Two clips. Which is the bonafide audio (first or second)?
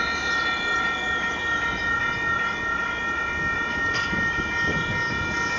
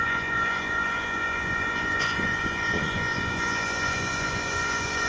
first